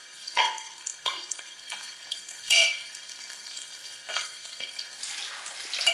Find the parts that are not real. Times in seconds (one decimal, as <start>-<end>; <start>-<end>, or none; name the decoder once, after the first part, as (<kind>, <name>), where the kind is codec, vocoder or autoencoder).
0.0-5.0 (codec, SNAC)